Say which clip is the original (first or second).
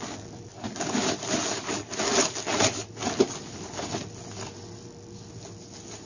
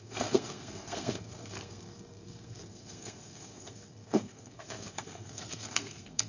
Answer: first